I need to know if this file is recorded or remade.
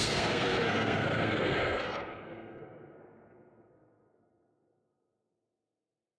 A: remade